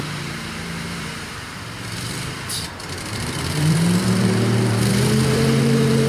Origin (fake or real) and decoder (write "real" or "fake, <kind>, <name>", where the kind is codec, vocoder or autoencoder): fake, vocoder, BigVGAN v2